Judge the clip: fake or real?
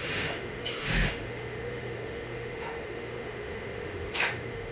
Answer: fake